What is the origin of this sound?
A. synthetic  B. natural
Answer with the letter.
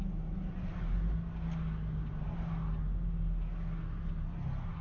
B